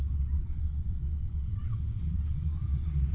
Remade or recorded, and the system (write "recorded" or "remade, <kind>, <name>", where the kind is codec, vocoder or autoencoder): remade, vocoder, WaveNeXt